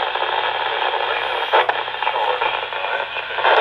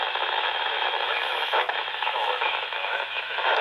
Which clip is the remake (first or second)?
second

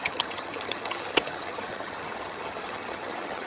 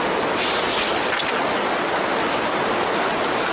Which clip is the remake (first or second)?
first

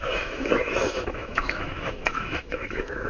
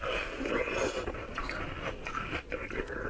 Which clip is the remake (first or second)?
first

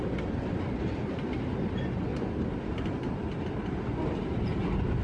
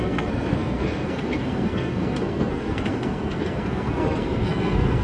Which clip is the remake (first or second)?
second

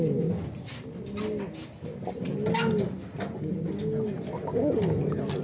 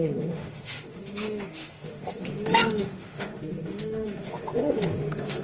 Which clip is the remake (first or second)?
second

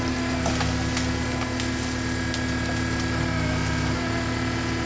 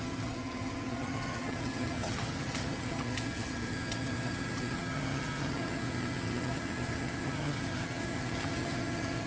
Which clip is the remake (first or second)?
second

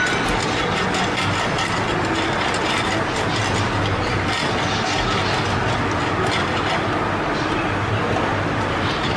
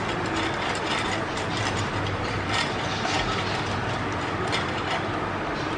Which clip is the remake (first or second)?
second